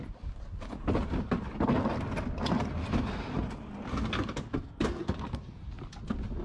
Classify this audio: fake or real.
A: real